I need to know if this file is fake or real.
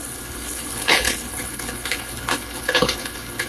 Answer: fake